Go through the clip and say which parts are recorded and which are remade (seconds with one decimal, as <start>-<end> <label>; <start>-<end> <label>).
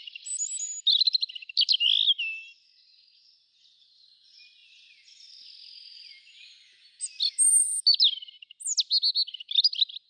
0.0-10.1 recorded